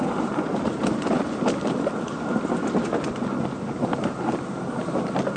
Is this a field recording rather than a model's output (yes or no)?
yes